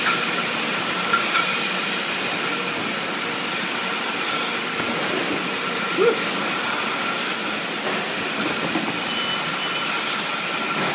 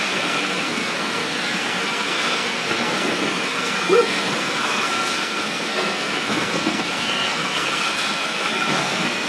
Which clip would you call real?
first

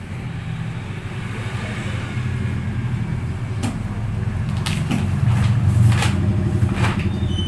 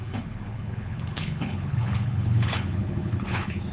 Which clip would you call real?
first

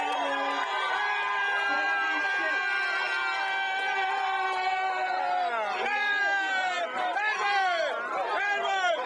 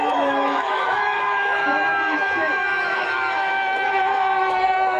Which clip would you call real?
first